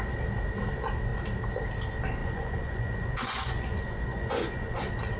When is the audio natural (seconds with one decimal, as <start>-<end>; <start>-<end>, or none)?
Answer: 0.0-2.2; 4.8-5.2